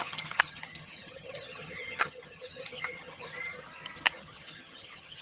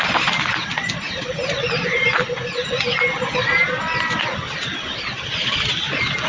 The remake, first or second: first